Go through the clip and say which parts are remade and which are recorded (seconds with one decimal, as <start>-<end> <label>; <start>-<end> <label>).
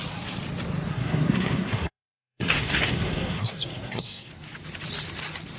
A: 0.0-0.9 recorded; 0.9-4.3 remade; 4.3-5.6 recorded